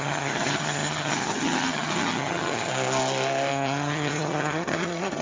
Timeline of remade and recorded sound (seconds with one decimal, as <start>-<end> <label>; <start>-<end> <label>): 0.0-2.7 remade; 2.7-3.5 recorded; 3.5-5.2 remade